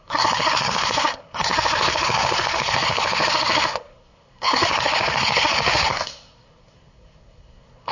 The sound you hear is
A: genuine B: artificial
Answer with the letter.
B